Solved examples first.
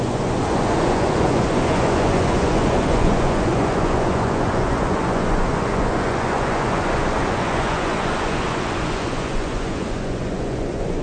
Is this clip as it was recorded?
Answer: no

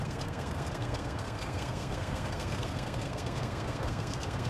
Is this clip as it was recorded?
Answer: no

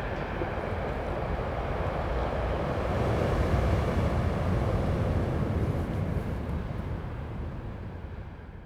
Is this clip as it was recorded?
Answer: yes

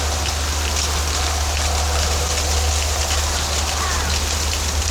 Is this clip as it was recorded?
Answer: yes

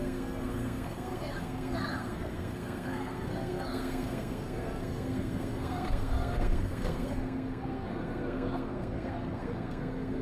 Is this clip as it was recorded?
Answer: no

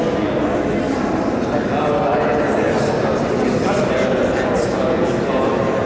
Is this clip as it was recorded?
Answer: yes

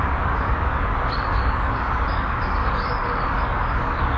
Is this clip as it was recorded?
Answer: no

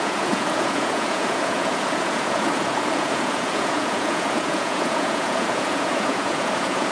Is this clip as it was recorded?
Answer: no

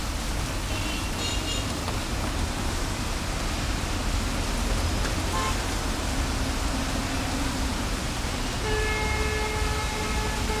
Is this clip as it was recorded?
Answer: yes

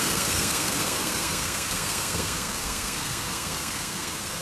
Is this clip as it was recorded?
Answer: no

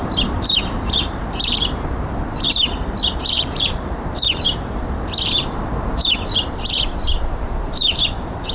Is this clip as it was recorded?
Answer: no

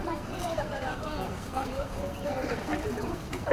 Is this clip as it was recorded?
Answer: no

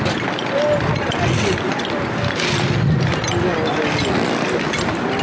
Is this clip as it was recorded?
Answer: yes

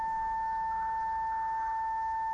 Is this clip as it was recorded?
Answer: yes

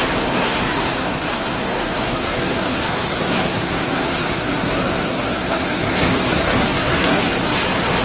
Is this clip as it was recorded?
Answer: no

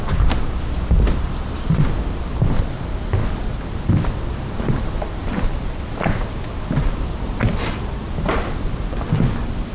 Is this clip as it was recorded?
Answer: yes